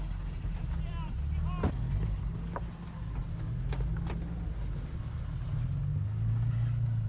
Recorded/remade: recorded